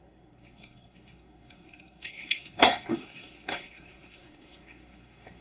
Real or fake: fake